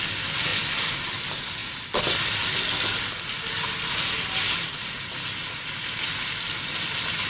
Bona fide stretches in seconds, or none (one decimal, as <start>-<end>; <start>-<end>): 0.0-7.3